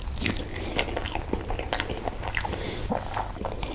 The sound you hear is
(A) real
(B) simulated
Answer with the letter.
A